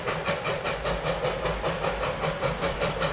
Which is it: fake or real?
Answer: fake